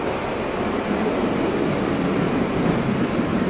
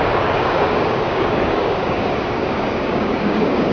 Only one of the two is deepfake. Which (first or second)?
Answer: second